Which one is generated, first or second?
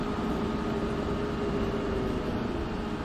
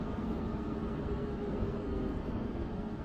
second